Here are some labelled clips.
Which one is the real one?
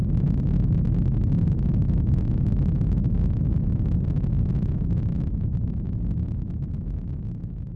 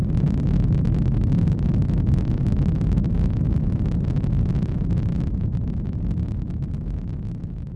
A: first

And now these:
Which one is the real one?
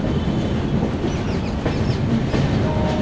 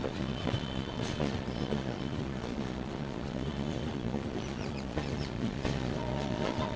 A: first